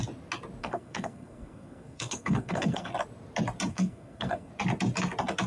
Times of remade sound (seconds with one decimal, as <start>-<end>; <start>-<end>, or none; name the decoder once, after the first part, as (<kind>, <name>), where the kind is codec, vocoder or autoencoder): 0.6-2.9 (codec, SNAC); 3.7-4.5